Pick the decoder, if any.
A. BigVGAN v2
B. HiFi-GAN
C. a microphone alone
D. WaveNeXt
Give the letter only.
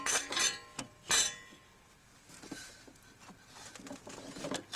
C